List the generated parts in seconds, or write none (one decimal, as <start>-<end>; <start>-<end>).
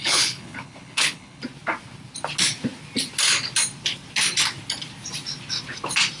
0.0-1.4